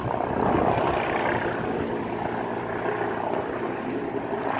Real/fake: real